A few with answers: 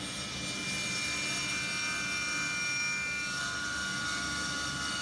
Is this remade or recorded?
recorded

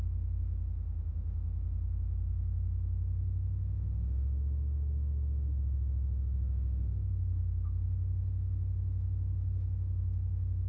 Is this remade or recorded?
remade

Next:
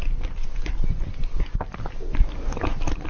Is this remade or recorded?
recorded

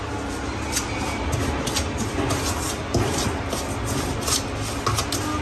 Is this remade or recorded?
recorded